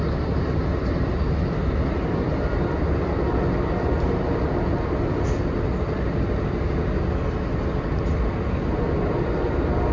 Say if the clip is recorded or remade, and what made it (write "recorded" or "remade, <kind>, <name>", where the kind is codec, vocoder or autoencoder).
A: recorded